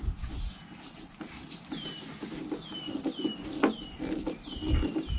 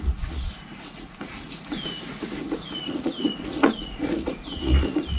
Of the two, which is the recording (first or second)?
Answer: first